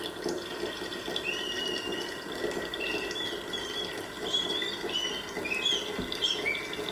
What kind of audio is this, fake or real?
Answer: real